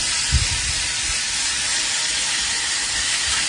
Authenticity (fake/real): real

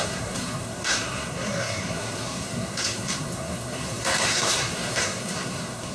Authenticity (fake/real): fake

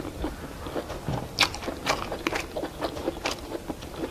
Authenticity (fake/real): real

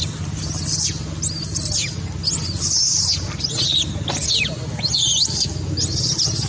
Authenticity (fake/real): real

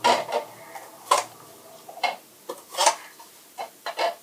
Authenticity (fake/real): real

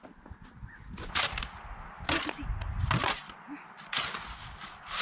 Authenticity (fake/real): real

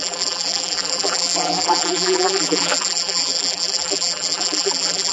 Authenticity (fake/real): fake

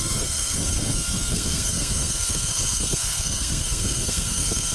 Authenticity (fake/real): fake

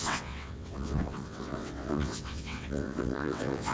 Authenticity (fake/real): fake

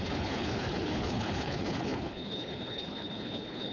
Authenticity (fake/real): fake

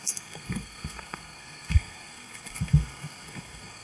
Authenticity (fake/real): fake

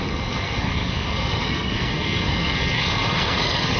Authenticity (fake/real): fake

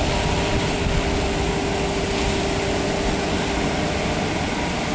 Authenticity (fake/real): real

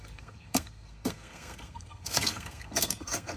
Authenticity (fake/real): fake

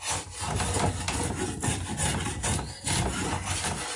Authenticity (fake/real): real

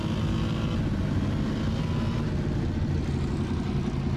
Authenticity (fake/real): real